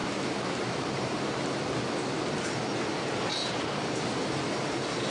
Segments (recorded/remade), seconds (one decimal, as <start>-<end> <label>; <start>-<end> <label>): 0.0-1.5 remade; 1.5-3.4 recorded; 3.4-4.0 remade; 4.0-5.1 recorded